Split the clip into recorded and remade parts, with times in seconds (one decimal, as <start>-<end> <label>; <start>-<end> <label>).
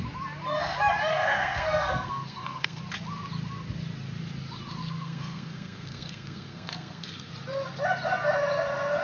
0.0-1.1 recorded; 1.1-2.8 remade; 2.8-4.8 recorded; 4.8-7.3 remade; 7.3-9.0 recorded